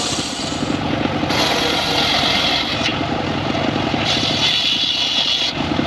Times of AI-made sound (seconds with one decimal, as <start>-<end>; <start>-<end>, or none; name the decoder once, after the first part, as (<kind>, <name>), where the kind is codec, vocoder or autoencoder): 2.9-4.2 (vocoder, BigVGAN v2)